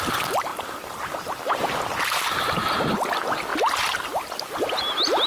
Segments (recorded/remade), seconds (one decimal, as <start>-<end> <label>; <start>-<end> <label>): 0.0-5.3 recorded